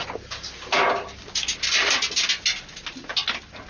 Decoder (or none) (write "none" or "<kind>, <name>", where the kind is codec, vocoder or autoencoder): none